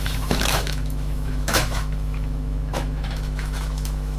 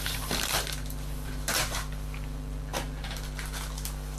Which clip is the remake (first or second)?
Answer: first